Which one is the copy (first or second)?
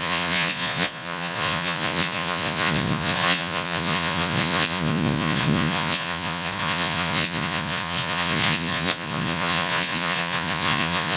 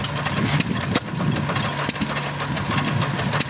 first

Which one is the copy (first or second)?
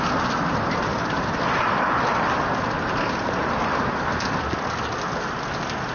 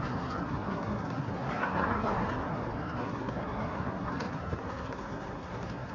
second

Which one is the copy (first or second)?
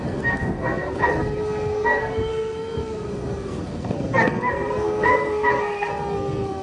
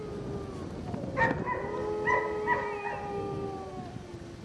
first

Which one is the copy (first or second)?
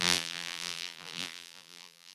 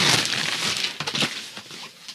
first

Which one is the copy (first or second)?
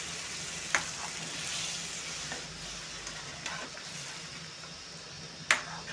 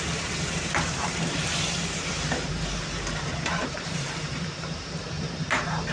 second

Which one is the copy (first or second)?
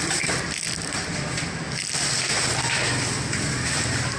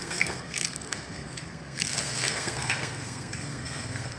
second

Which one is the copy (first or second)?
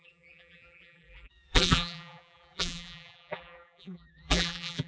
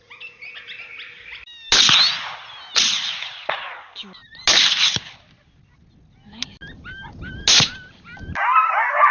first